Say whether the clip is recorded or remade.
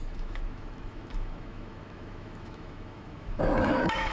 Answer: remade